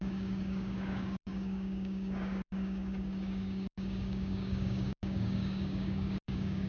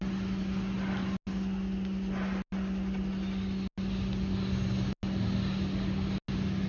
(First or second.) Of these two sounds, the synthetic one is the first